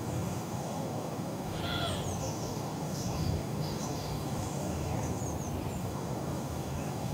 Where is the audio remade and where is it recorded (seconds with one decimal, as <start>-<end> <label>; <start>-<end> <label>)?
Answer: 0.0-1.6 remade; 1.6-2.2 recorded; 2.2-5.2 remade; 5.2-5.8 recorded; 5.8-7.1 remade